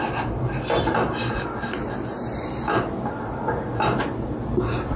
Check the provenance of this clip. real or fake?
real